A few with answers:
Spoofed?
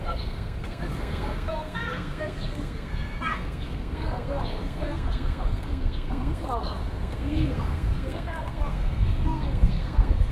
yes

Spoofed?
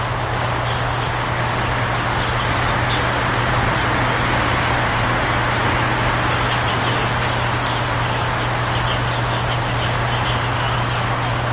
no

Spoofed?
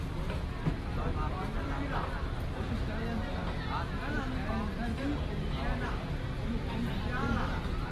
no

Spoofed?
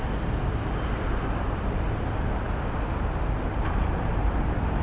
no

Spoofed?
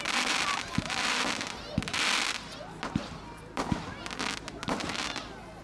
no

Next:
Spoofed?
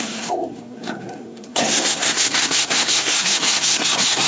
yes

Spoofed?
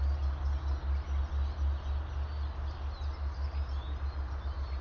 no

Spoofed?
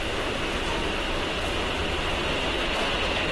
yes